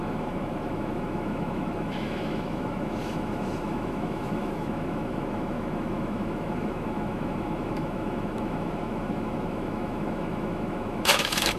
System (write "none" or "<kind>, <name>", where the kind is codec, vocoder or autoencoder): autoencoder, DAC-VAE